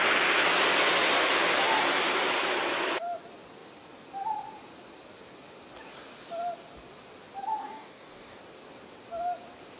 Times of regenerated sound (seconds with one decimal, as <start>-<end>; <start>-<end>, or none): 7.6-8.4